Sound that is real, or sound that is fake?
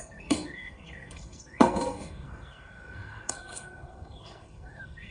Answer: fake